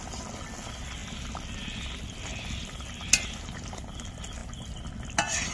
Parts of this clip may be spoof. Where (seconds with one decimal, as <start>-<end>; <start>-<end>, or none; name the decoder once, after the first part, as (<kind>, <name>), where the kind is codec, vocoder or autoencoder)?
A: none